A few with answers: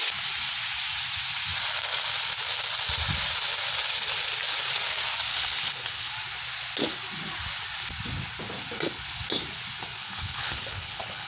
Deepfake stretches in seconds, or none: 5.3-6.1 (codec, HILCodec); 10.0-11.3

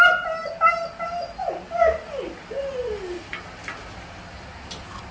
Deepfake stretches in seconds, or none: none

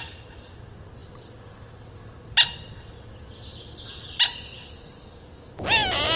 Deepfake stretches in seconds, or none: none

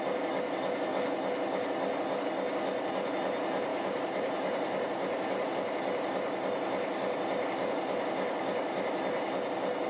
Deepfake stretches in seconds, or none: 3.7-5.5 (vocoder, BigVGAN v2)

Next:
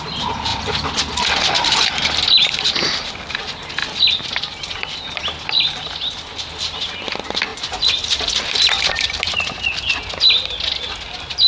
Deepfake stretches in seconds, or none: 0.5-3.4 (vocoder, BigVGAN v2); 3.8-6.4; 7.5-8.9

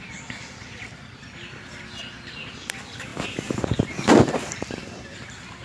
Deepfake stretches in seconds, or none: 0.0-5.6 (vocoder, BigVGAN v2)

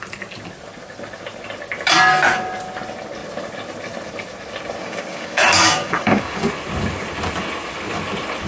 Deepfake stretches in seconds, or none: 4.8-6.5 (codec, DAC)